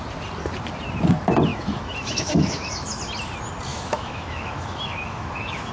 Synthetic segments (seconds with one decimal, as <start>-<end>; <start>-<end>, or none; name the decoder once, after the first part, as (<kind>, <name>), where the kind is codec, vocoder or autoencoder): 1.5-3.0 (autoencoder, DAC-VAE); 3.7-5.7